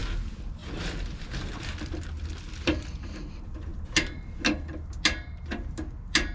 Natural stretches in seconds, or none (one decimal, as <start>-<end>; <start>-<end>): 0.0-6.3